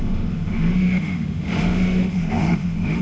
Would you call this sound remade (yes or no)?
yes